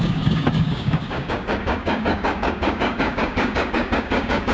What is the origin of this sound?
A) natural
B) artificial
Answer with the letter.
B